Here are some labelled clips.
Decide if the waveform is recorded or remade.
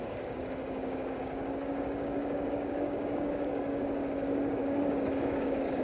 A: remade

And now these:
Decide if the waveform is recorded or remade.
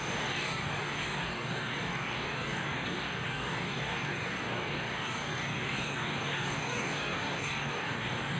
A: remade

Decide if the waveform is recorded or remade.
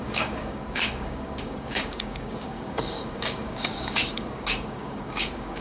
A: remade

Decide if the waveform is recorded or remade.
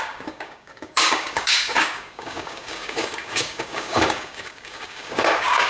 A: remade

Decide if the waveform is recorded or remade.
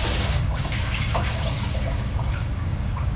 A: remade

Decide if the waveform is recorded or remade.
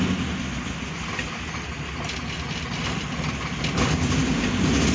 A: recorded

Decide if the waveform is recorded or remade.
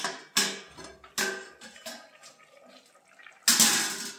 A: recorded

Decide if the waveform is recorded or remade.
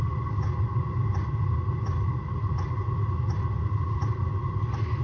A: recorded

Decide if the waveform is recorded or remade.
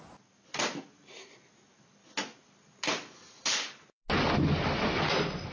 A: recorded